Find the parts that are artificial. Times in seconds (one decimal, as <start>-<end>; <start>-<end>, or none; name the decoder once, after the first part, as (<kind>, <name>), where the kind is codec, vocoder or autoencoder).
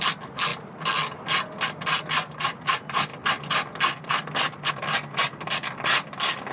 none